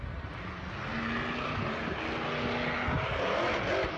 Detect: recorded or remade recorded